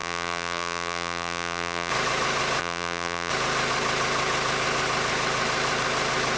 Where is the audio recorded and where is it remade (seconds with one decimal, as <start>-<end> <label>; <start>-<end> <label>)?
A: 0.0-1.9 remade; 1.9-2.6 recorded; 2.6-3.3 remade; 3.3-6.4 recorded